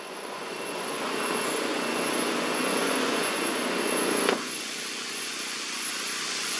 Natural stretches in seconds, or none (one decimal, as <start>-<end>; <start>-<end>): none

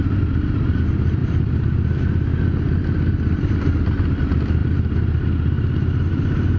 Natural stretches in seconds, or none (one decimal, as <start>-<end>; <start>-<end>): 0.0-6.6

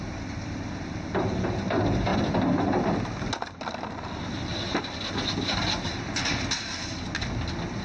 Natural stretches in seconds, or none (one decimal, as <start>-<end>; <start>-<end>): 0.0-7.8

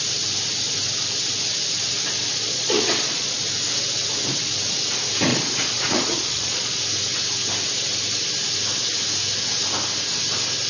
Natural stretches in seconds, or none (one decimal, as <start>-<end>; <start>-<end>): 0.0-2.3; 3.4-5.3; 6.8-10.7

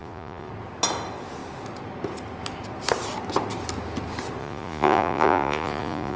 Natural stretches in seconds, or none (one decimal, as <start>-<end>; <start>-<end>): 0.5-4.4

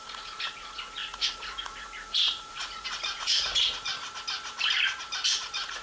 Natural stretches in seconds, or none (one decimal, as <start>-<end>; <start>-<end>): 3.9-5.3

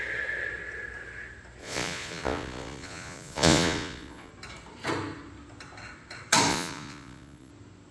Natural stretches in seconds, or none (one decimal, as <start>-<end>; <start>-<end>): 0.0-1.6; 4.3-6.5; 7.5-7.9